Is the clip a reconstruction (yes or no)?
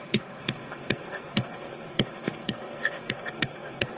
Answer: yes